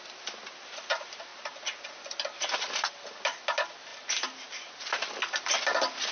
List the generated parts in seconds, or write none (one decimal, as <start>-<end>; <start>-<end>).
0.0-1.3; 1.9-3.9; 4.5-6.1